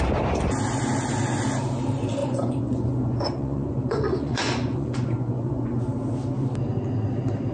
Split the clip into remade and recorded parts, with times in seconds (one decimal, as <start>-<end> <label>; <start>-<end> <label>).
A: 0.0-2.2 recorded; 2.2-5.8 remade; 5.8-7.5 recorded